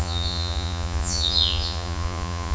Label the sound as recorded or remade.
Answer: remade